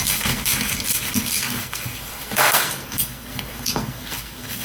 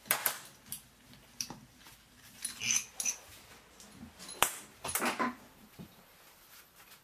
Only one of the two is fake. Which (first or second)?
first